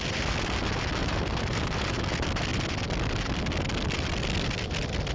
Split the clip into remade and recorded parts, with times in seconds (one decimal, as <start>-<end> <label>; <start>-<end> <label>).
0.0-1.0 recorded; 1.0-2.0 remade; 2.0-5.1 recorded